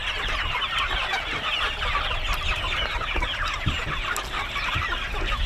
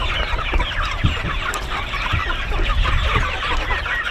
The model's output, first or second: second